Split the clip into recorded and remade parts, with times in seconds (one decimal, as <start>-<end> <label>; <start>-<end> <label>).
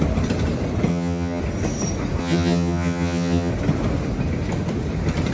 0.0-0.9 recorded; 0.9-1.4 remade; 1.4-2.2 recorded; 2.2-3.5 remade; 3.5-5.3 recorded